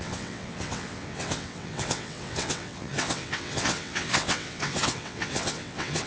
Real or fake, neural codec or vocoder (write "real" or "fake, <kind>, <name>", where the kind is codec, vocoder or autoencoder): fake, vocoder, WaveNeXt